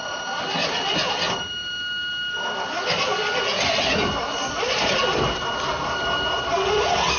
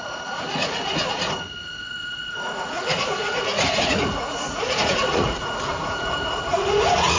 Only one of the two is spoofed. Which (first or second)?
second